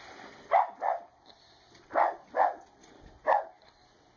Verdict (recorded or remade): recorded